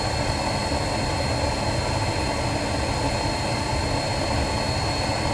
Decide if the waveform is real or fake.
real